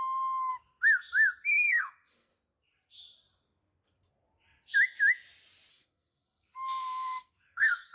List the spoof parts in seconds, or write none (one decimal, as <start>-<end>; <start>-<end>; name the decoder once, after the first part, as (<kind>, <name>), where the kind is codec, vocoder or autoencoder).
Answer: 0.0-0.5 (codec, SNAC); 1.7-2.3; 5.7-7.9